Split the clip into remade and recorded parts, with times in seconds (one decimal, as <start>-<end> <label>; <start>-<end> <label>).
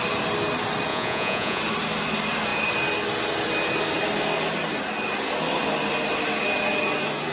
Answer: 0.0-0.9 recorded; 0.9-1.6 remade; 1.6-7.3 recorded